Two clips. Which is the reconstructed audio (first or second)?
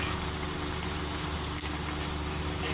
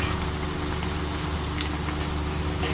first